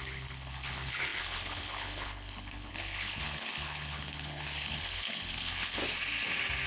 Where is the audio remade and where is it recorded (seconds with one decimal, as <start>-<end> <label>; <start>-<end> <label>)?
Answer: 0.0-5.8 remade; 5.8-6.7 recorded